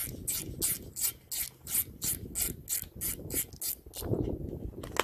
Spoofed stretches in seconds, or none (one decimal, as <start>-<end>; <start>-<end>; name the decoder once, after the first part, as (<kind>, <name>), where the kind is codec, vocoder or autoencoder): none